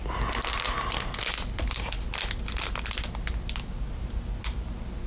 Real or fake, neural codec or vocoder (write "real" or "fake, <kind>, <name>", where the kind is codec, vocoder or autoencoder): real